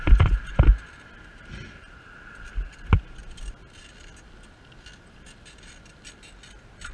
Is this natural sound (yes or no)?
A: yes